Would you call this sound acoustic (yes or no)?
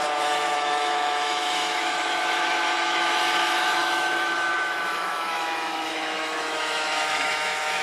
no